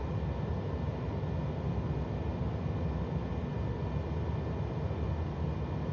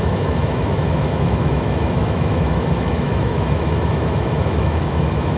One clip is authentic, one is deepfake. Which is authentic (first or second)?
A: first